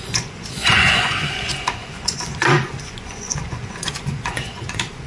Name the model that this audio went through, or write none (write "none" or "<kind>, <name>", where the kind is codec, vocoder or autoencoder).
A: vocoder, Vocos